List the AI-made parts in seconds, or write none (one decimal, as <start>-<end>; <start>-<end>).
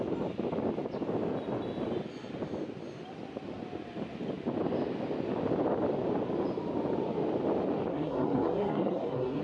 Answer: 7.9-9.4